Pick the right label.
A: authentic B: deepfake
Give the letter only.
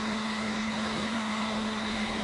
B